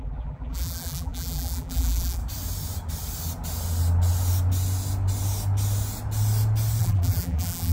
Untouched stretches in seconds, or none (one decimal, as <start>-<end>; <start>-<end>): 2.2-6.8